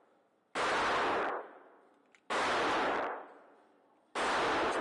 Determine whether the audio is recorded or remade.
recorded